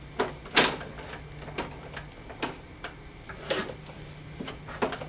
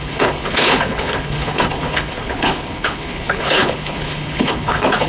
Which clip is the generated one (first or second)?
second